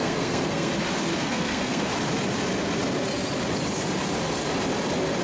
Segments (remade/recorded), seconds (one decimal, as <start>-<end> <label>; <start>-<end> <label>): 0.0-0.7 remade; 0.7-1.3 recorded; 1.3-1.9 remade; 1.9-5.2 recorded